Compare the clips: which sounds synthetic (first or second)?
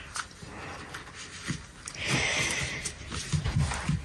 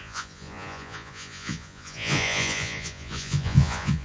second